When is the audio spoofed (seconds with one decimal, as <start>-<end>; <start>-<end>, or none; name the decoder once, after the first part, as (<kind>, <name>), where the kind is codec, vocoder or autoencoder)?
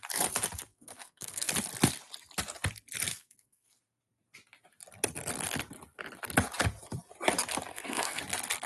0.7-1.5 (codec, SNAC); 3.1-3.8; 7.7-8.2